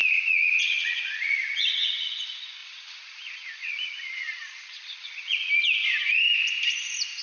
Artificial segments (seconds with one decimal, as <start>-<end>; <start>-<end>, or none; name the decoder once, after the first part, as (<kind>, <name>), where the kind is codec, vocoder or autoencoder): 0.0-2.2 (vocoder, Vocos); 2.6-5.5